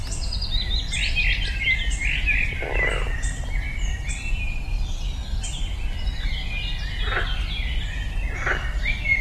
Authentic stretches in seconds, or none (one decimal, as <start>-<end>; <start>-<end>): 0.0-9.2